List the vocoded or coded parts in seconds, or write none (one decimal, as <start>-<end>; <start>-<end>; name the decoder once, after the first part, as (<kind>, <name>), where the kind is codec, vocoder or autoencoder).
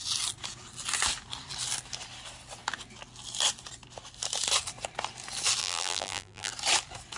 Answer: 5.6-6.5 (vocoder, BigVGAN v2)